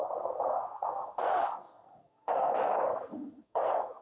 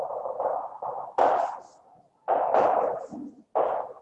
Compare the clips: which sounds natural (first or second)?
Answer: second